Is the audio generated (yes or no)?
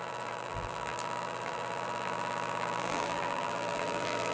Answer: yes